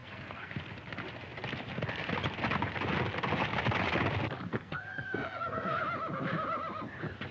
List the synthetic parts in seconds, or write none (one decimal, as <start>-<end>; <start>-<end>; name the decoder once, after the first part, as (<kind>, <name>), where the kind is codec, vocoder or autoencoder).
0.0-0.6 (codec, SNAC); 4.5-5.8